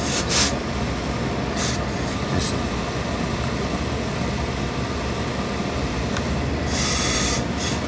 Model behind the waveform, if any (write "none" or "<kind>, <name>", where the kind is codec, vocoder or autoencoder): none